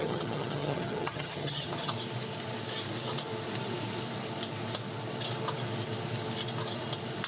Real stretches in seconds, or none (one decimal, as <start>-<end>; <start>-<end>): 1.9-7.3